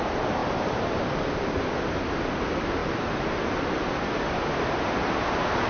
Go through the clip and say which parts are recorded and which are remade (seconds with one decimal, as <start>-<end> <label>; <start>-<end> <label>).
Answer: 0.0-0.4 recorded; 0.4-1.5 remade; 1.5-2.8 recorded; 2.8-4.2 remade; 4.2-5.7 recorded